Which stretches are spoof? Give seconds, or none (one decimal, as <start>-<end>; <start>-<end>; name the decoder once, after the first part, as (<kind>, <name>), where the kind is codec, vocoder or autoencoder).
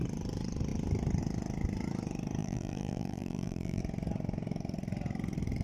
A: 2.4-3.8 (vocoder, BigVGAN v2)